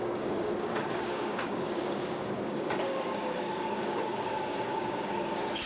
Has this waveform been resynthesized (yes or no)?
yes